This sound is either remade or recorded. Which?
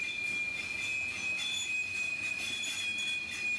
recorded